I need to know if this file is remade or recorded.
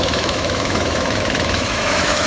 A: remade